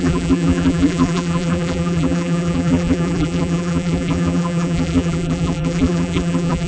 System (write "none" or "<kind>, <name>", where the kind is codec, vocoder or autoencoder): vocoder, BigVGAN v2